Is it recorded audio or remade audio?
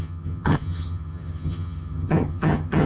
remade